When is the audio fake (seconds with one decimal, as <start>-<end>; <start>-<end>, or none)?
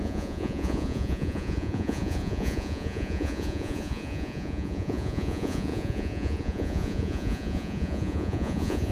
0.0-8.9